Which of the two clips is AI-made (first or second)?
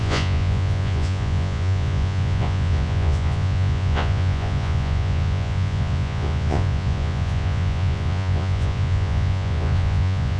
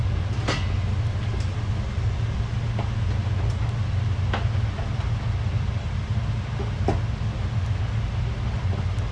first